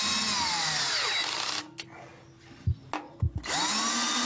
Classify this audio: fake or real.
real